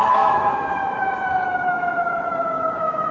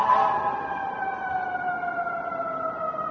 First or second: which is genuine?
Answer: second